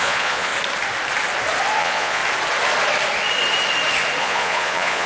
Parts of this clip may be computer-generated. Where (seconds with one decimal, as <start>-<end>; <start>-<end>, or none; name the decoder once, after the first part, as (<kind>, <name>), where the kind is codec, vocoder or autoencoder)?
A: 0.0-0.5 (vocoder, Vocos); 1.8-2.2; 4.2-5.1